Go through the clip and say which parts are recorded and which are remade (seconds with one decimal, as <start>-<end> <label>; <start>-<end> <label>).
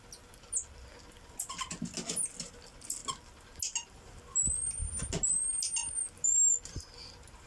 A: 0.0-7.5 recorded